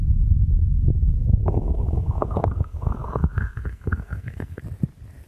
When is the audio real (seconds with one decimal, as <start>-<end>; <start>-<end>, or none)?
0.0-1.4; 4.6-5.3